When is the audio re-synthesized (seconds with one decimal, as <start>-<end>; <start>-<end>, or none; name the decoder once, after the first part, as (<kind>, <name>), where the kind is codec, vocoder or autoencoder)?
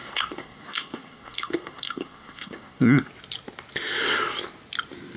0.0-3.1 (codec, SNAC)